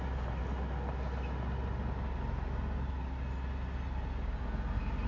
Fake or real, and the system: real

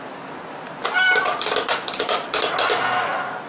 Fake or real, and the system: real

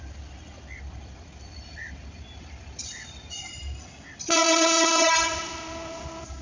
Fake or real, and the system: real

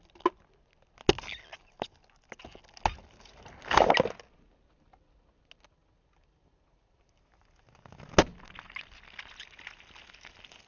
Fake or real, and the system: real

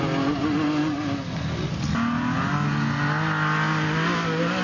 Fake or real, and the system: real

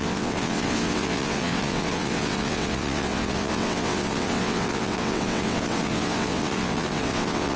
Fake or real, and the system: fake, vocoder, WaveNeXt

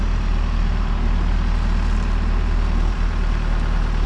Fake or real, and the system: real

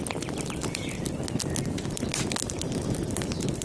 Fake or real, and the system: real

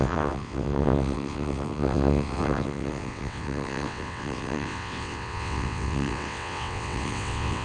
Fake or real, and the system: fake, vocoder, WaveNeXt